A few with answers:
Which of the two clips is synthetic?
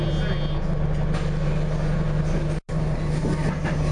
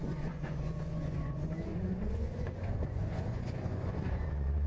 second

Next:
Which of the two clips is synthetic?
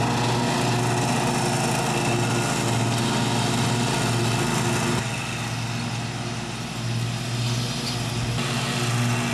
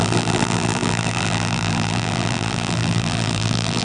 second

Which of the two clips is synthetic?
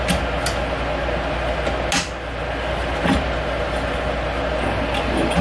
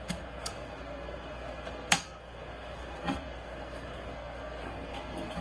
second